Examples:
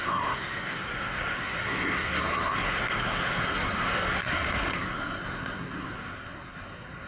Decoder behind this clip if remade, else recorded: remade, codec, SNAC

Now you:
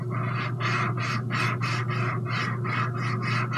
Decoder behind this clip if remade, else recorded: recorded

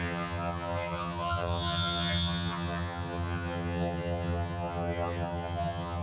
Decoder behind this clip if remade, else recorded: remade, vocoder, HiFi-GAN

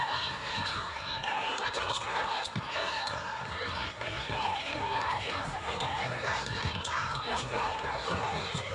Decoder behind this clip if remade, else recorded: remade, codec, SNAC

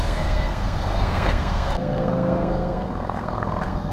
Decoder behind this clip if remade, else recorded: remade, codec, SNAC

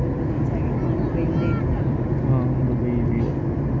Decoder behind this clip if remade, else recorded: recorded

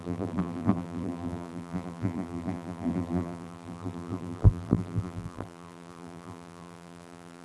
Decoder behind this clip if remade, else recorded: remade, vocoder, BigVGAN v2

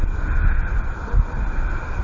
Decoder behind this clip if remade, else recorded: recorded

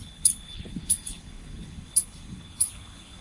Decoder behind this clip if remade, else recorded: remade, codec, HILCodec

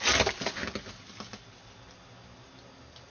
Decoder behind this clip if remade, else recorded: recorded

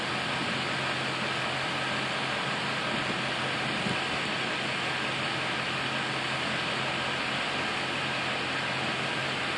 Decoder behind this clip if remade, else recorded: recorded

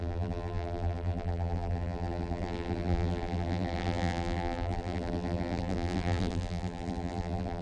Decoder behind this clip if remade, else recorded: remade, vocoder, BigVGAN v2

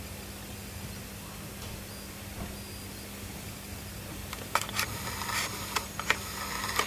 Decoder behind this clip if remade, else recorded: recorded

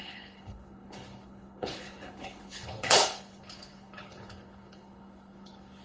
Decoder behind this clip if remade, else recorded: remade, codec, HILCodec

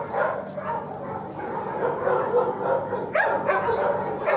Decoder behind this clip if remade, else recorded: recorded